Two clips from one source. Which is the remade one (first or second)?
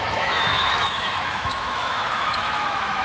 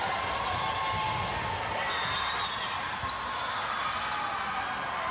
first